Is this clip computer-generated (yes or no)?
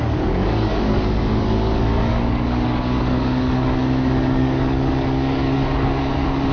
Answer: yes